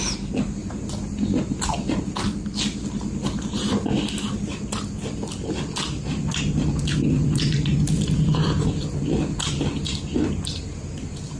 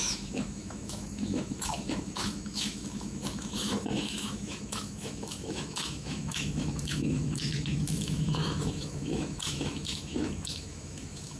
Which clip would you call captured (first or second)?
first